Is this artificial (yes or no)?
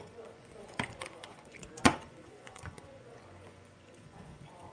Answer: yes